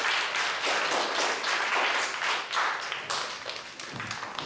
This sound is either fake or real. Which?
real